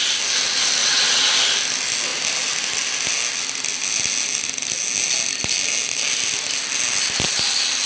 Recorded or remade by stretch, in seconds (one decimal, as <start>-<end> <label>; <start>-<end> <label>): 0.0-0.8 recorded; 0.8-1.3 remade; 1.3-7.9 recorded

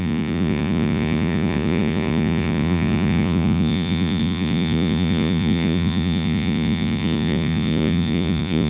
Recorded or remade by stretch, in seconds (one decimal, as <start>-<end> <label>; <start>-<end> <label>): 0.0-8.7 remade